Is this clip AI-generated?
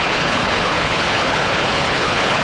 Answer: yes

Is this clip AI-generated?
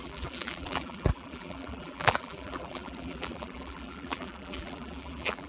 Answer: yes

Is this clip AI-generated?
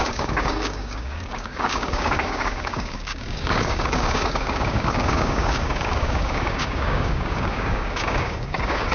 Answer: yes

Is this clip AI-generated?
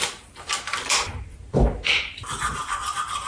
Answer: no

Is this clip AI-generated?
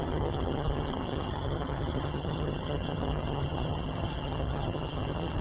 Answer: yes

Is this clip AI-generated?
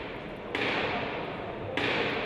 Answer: no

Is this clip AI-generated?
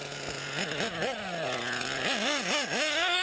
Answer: no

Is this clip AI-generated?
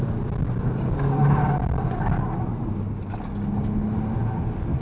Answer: no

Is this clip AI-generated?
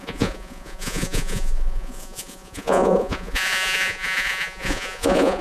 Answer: yes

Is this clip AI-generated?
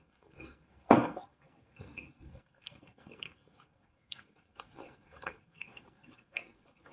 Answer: yes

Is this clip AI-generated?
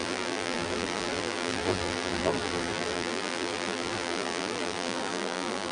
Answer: yes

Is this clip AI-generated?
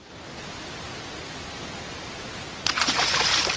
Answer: no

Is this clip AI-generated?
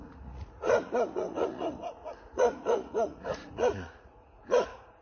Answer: yes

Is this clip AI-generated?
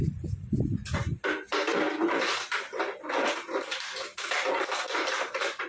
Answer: no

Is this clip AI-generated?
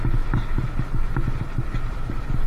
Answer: no